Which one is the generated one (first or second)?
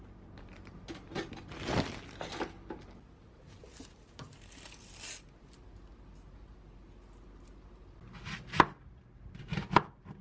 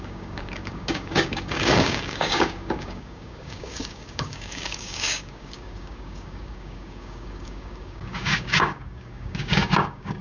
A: second